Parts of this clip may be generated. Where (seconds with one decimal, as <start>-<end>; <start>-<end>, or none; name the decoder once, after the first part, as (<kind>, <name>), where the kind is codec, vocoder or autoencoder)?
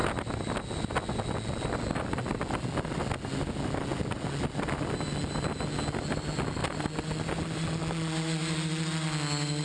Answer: none